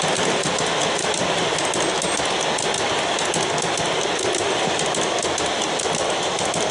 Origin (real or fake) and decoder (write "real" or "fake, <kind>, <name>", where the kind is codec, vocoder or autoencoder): real